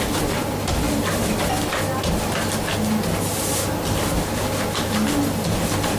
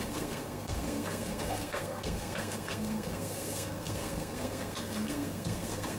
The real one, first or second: first